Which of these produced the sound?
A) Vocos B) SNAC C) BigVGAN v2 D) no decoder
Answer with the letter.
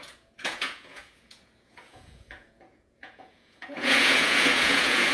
A